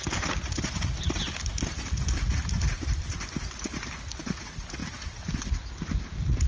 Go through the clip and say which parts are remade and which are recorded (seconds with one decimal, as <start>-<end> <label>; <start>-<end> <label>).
0.0-6.5 recorded